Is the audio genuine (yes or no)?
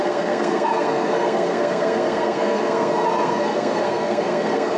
no